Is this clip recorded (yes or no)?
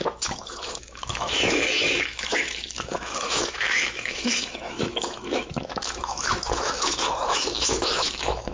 no